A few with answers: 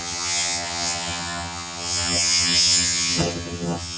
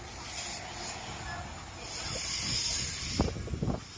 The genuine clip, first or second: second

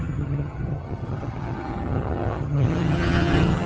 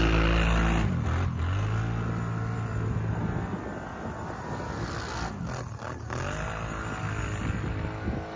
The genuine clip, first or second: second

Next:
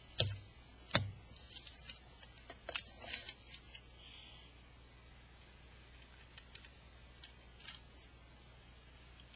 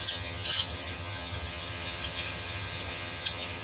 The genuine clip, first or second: first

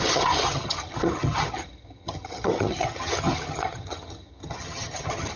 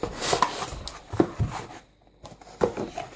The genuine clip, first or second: second